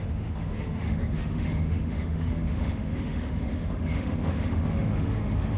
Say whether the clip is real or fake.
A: fake